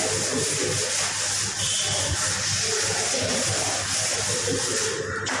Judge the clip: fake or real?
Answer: real